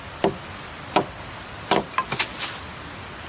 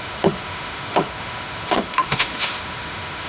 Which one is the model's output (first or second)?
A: second